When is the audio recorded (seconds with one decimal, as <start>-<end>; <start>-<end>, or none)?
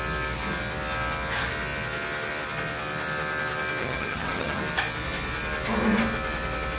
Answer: 0.0-3.8; 4.6-6.8